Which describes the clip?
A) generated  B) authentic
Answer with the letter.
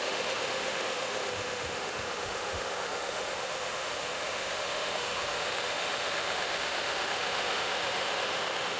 A